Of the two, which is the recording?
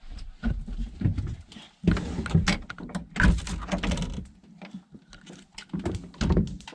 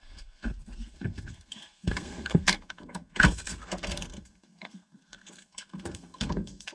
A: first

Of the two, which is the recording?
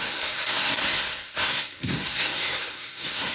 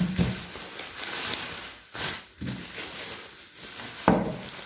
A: second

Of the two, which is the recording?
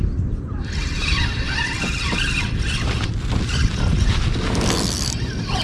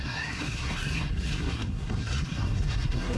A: first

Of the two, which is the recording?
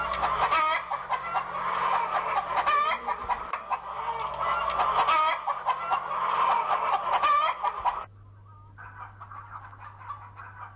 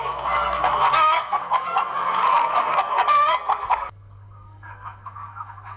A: first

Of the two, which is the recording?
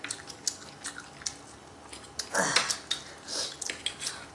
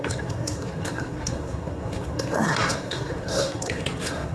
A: first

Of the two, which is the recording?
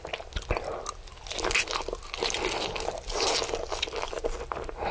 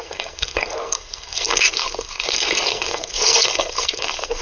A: first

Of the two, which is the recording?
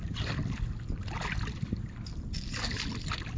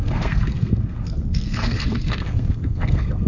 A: first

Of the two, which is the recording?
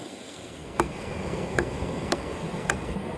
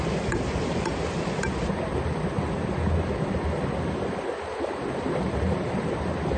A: second